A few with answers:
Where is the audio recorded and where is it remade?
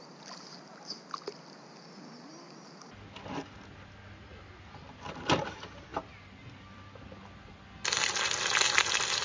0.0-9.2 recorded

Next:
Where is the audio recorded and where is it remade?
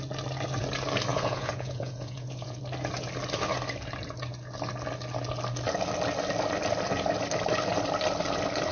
0.0-1.1 recorded; 1.1-2.6 remade; 2.6-8.7 recorded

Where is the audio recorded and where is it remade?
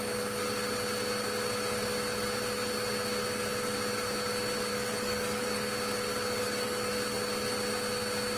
0.0-4.7 recorded; 4.7-5.7 remade; 5.7-6.4 recorded; 6.4-6.9 remade; 6.9-8.4 recorded